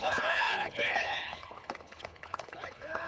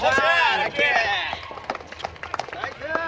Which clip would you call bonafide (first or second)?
second